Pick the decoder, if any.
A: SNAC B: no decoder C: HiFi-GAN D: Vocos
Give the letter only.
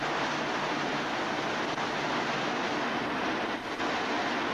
B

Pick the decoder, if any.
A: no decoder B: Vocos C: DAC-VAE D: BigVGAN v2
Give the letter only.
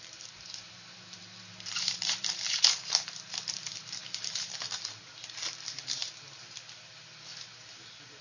D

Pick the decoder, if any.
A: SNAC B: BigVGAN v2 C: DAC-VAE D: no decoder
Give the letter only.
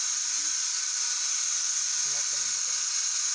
D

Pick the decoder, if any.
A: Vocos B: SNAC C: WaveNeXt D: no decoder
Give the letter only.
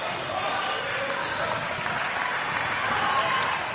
D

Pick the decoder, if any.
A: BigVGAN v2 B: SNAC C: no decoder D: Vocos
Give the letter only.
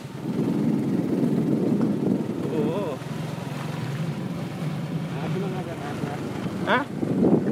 C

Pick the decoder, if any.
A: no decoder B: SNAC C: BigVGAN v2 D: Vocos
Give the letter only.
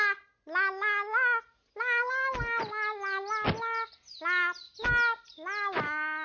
A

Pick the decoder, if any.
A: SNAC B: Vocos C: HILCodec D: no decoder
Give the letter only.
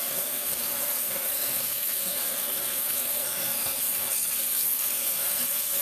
A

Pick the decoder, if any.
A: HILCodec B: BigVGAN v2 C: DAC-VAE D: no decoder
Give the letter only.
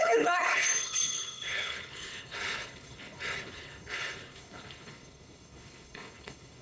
A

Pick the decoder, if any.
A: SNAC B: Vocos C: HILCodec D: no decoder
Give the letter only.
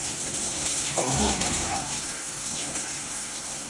A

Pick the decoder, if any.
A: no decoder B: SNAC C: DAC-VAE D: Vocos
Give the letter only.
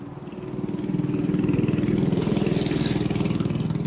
A